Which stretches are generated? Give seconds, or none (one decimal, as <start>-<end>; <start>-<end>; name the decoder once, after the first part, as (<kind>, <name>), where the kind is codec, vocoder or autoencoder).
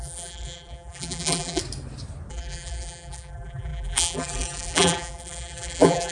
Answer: 0.0-1.6 (vocoder, BigVGAN v2); 2.3-6.1